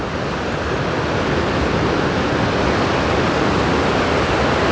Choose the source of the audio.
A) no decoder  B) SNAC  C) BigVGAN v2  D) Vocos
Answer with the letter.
A